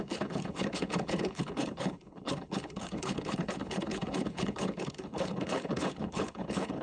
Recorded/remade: remade